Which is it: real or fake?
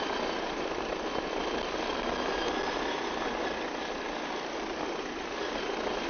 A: real